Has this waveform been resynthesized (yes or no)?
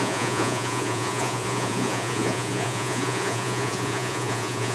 yes